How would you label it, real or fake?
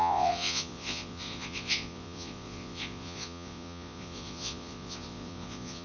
fake